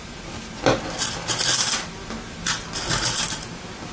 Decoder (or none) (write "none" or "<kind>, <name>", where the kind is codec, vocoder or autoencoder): none